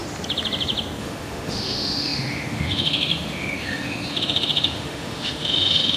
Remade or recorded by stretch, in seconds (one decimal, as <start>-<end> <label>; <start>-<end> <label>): 0.0-1.0 recorded; 1.0-6.0 remade